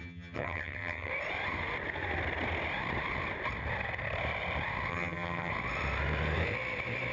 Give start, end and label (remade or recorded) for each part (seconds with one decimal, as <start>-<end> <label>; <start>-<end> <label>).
0.0-1.1 remade; 1.1-4.9 recorded; 4.9-5.5 remade; 5.5-7.1 recorded